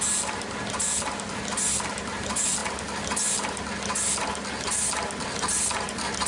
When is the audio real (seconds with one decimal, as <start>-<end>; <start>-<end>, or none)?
0.0-6.3